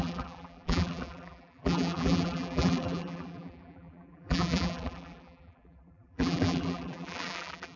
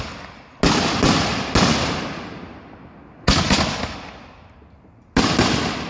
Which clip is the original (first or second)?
second